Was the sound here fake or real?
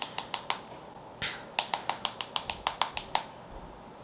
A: real